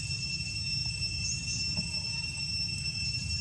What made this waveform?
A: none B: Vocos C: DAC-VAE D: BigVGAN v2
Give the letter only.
D